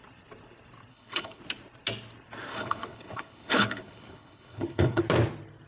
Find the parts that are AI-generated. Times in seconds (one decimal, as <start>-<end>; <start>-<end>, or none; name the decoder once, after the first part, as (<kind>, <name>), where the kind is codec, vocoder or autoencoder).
0.9-1.4 (codec, HILCodec); 2.5-5.0

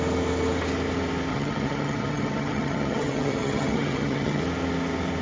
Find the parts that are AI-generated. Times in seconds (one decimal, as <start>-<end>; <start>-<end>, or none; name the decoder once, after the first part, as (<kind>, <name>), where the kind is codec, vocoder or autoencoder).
1.3-4.4 (vocoder, HiFi-GAN)

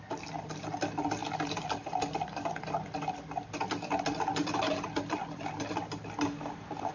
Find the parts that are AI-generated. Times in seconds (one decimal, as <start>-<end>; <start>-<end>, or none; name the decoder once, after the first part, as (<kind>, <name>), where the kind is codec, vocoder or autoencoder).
none

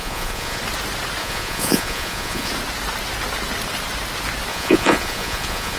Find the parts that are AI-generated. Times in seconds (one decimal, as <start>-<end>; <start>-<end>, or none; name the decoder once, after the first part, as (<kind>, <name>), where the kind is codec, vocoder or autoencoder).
0.0-0.6 (vocoder, Vocos); 1.2-2.5; 4.5-5.8

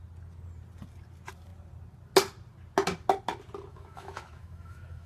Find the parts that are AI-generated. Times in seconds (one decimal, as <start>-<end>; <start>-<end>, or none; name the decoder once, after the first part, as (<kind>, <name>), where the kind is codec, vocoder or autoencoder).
3.7-5.1 (autoencoder, DAC-VAE)

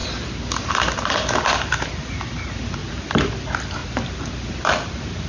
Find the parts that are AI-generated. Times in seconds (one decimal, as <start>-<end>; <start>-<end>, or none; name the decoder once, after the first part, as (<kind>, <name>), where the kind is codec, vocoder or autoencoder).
none

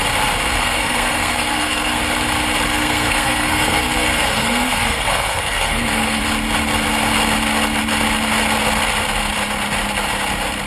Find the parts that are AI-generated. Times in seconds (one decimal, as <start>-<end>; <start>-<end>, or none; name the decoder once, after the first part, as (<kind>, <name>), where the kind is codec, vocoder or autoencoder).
0.6-2.0 (codec, SNAC); 2.7-6.2

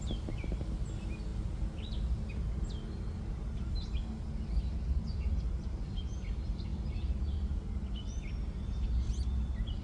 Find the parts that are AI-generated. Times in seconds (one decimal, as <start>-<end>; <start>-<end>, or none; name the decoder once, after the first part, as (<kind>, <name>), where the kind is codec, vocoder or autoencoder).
none